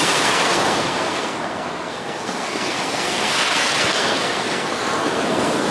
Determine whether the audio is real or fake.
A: fake